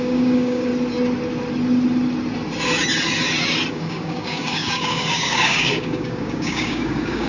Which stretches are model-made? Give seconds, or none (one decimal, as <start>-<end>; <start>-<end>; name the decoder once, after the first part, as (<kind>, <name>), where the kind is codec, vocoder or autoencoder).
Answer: 0.0-0.7 (codec, DAC); 3.7-7.3